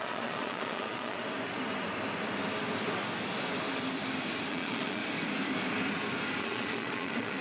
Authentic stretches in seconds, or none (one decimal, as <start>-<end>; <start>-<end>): 1.2-4.5; 5.0-6.4